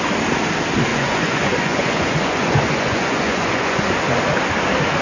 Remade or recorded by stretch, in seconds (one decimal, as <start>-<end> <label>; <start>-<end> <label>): 0.0-0.9 recorded; 0.9-3.9 remade; 3.9-5.0 recorded